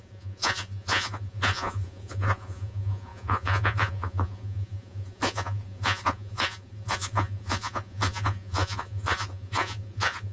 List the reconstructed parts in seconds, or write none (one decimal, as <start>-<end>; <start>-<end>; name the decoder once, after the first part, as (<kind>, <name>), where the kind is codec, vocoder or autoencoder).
0.0-10.3 (vocoder, Vocos)